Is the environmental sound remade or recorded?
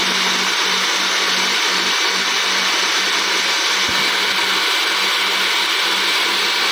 recorded